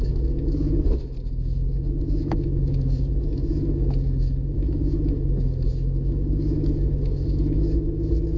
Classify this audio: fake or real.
fake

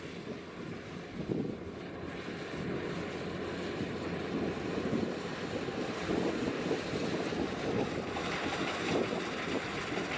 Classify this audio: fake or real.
real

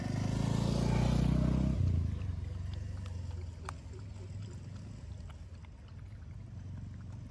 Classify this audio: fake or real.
real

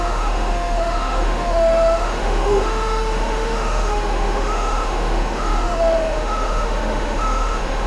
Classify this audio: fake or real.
fake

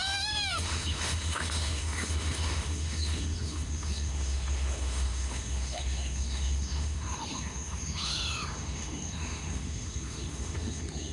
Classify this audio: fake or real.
fake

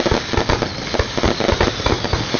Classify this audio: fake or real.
real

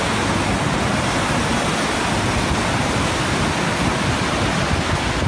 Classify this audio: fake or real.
real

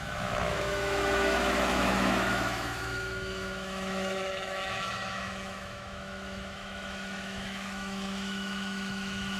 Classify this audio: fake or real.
fake